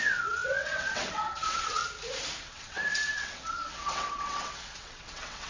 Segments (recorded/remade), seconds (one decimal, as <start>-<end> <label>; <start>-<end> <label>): 0.0-1.8 remade; 1.8-2.4 recorded; 2.4-5.5 remade